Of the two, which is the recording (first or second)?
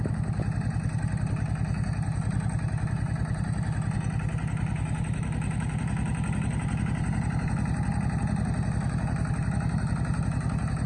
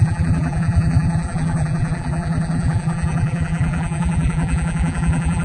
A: first